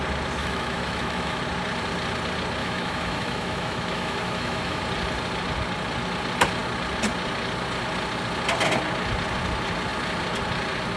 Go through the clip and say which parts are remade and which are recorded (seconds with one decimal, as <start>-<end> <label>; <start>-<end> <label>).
0.0-0.4 recorded; 0.4-1.4 remade; 1.4-2.6 recorded; 2.6-4.8 remade; 4.8-11.0 recorded

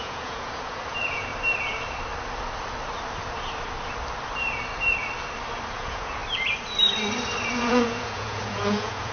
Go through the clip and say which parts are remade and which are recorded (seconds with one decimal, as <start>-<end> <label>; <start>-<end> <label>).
0.0-1.3 remade; 1.3-5.7 recorded; 5.7-6.2 remade; 6.2-7.6 recorded; 7.6-9.1 remade

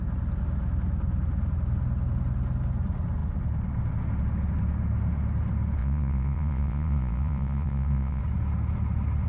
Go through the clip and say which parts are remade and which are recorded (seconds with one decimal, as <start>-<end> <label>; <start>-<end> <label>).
0.0-5.8 recorded; 5.8-8.2 remade; 8.2-9.3 recorded

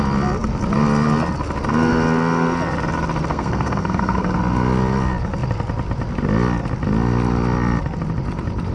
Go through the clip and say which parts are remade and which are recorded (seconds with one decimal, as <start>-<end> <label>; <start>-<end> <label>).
0.0-3.3 recorded; 3.3-4.4 remade; 4.4-8.7 recorded

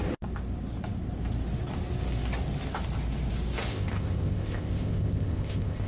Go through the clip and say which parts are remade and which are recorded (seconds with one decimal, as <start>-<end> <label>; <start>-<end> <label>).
0.0-3.7 recorded; 3.7-5.9 remade

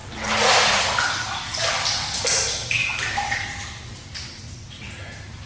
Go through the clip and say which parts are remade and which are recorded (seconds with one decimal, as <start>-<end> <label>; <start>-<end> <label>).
0.0-5.5 recorded

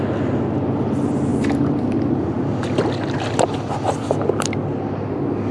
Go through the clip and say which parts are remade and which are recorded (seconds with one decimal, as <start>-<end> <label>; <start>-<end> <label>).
0.0-1.3 recorded; 1.3-2.1 remade; 2.1-5.5 recorded

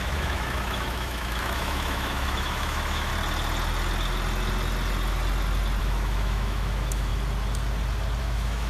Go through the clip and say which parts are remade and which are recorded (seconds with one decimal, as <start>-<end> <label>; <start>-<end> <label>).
0.0-3.1 remade; 3.1-5.8 recorded; 5.8-7.1 remade; 7.1-8.2 recorded; 8.2-8.7 remade